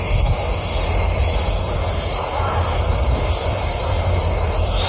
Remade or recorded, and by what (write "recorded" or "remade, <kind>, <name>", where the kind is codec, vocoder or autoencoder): recorded